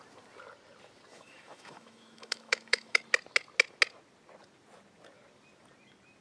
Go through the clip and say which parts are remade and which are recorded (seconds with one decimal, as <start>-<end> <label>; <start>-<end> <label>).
0.0-1.1 recorded; 1.1-3.0 remade; 3.0-6.2 recorded